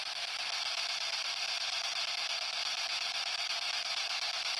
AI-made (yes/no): no